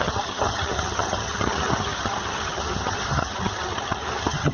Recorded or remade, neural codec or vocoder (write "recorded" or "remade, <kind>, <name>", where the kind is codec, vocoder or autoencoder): remade, vocoder, HiFi-GAN